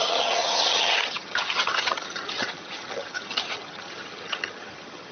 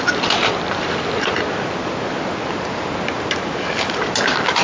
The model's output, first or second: first